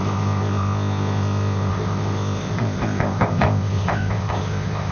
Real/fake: fake